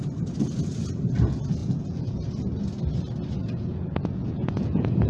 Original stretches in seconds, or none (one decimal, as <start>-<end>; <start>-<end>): 0.0-1.6; 2.2-3.4